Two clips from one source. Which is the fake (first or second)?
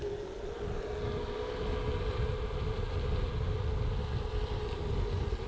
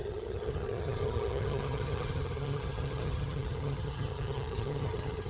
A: second